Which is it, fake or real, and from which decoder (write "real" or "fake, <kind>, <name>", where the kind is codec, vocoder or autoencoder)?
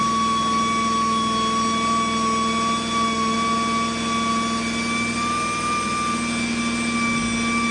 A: real